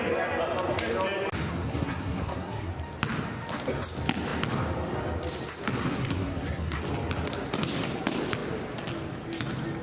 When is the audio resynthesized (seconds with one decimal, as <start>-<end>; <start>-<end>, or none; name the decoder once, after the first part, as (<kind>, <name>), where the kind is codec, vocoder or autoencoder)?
1.5-2.7 (codec, SNAC); 5.8-6.8